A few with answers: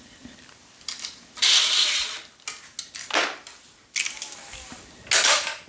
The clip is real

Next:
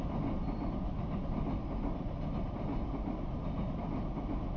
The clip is real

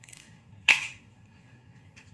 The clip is fake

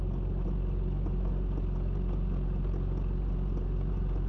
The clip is real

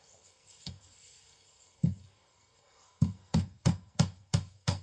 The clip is fake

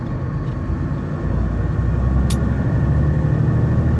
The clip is real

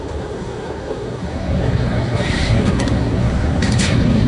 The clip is fake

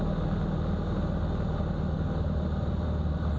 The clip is real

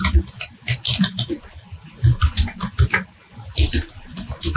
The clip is real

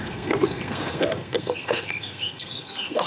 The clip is fake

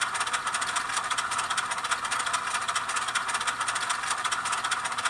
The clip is real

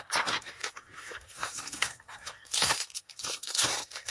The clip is fake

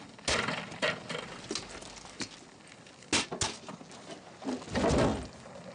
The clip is real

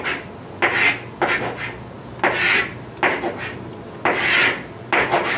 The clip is real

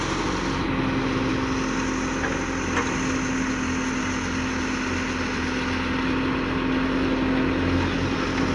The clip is real